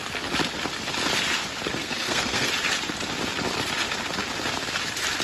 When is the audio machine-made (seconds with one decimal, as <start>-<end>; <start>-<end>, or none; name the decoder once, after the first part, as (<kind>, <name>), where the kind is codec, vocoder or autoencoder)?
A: 1.8-2.5 (codec, SNAC)